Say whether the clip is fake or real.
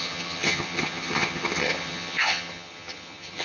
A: fake